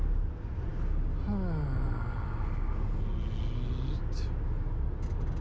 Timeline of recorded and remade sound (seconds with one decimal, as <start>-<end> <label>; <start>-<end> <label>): 0.0-5.4 recorded